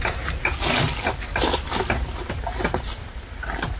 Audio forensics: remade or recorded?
recorded